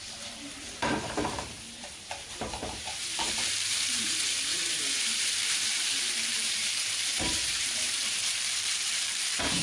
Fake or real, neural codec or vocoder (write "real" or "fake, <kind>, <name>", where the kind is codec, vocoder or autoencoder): fake, vocoder, BigVGAN v2